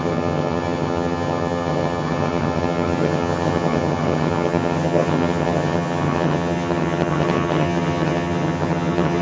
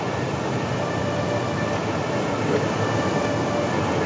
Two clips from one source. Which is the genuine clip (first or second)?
second